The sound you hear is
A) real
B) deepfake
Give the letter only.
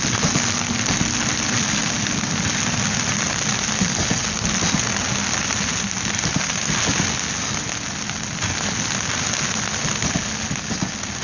A